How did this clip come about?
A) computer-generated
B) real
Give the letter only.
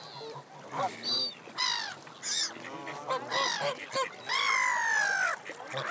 B